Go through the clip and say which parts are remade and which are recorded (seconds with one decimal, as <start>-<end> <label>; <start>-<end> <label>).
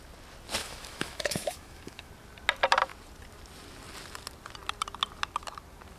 0.0-0.6 recorded; 0.6-2.1 remade; 2.1-6.0 recorded